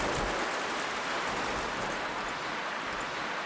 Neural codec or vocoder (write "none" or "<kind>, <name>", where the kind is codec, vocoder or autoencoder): none